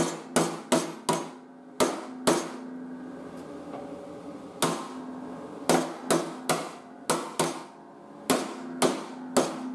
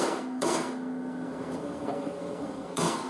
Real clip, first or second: first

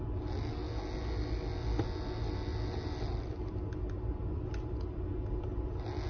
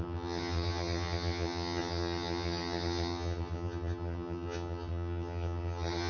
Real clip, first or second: first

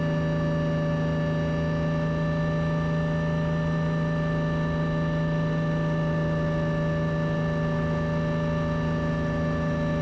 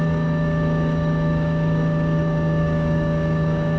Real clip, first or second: first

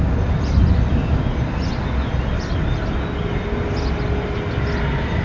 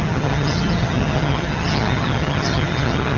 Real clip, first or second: first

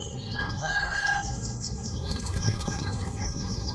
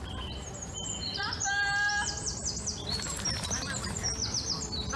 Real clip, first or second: second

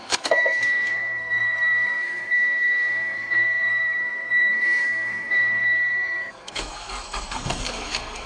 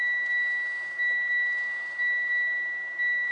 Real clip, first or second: second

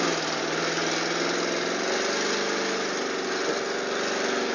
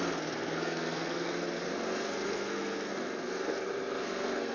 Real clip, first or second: first